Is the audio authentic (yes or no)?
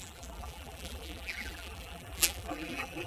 no